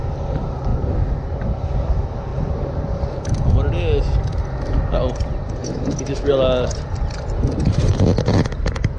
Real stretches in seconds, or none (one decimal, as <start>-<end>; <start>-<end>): 0.0-5.6; 6.3-9.0